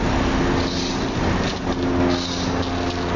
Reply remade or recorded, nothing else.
recorded